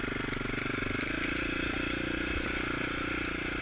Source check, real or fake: real